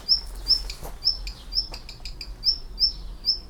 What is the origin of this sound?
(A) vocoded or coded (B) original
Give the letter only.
B